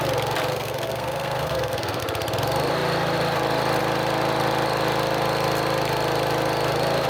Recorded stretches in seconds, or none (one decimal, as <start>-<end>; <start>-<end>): 0.0-0.5; 2.0-7.1